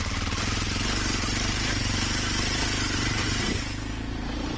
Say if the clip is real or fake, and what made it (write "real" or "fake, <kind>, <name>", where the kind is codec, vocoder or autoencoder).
fake, vocoder, BigVGAN v2